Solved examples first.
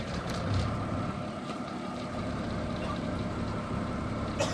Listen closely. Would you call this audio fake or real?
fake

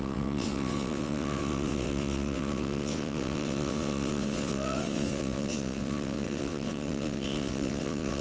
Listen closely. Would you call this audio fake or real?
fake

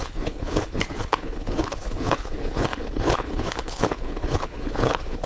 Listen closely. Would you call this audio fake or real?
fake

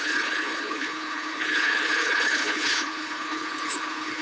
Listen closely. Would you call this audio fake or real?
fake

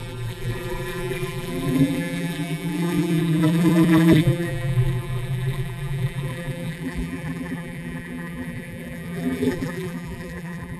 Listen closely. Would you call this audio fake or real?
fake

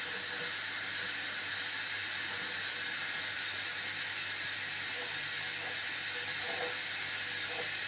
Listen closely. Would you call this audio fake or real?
real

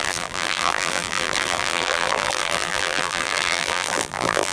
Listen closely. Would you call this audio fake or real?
fake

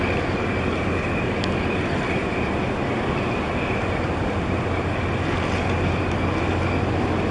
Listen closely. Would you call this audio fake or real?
real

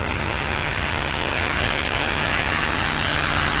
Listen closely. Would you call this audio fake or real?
fake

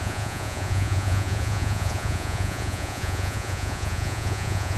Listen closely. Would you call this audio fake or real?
fake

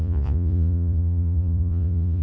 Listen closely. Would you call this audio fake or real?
fake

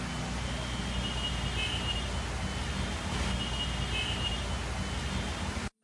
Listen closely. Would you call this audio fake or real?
real